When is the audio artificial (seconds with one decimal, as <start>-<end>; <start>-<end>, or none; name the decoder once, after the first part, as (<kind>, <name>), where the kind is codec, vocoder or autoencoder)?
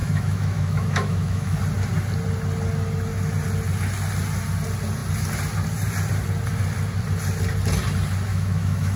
0.0-1.6 (autoencoder, DAC-VAE); 8.3-9.0